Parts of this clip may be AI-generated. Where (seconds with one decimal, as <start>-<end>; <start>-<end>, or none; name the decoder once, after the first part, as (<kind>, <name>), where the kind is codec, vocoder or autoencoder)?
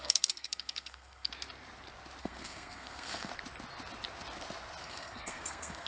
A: 0.0-1.3 (codec, SNAC); 2.2-3.3; 4.8-5.9